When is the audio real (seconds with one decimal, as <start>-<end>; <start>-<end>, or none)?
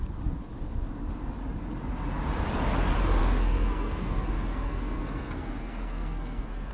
0.0-3.2